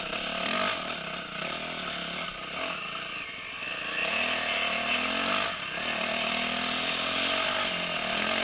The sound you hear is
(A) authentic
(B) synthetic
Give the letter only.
A